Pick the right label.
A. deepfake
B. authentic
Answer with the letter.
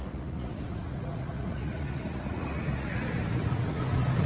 A